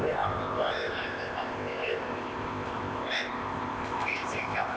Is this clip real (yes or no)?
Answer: no